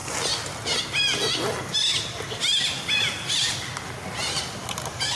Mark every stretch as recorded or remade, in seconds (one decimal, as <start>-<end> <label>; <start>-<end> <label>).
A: 0.0-5.2 recorded

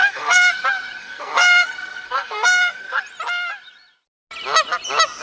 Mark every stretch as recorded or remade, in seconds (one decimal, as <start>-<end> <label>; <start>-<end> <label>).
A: 0.0-0.5 remade; 0.5-1.0 recorded; 1.0-3.0 remade; 3.0-5.2 recorded

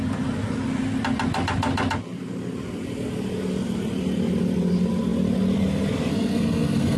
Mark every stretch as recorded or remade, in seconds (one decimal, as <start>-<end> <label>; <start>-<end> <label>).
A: 0.0-6.1 recorded; 6.1-7.0 remade